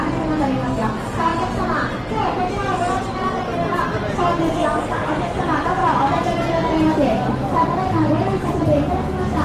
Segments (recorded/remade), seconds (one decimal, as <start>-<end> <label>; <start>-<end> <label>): 0.0-9.4 recorded